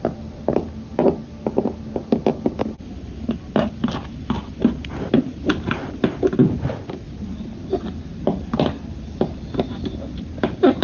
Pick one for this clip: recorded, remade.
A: recorded